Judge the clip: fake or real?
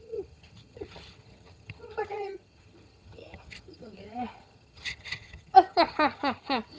fake